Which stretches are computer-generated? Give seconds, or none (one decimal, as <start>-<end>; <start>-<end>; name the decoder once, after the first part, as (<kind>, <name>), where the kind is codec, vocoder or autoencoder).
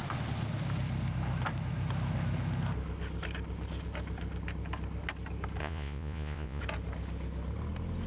5.6-6.6 (vocoder, Vocos)